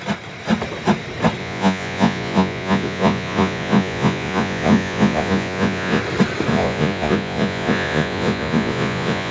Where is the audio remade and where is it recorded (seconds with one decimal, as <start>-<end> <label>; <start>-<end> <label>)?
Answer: 0.0-1.4 recorded; 1.4-6.0 remade; 6.0-6.5 recorded; 6.5-9.3 remade